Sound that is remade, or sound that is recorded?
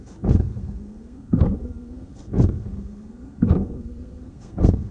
remade